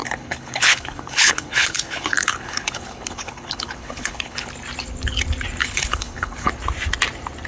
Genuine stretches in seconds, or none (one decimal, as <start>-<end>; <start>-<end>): 4.5-5.6; 6.5-7.5